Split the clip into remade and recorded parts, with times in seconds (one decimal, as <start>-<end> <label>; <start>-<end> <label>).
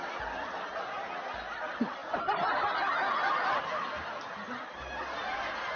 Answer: 0.0-5.8 recorded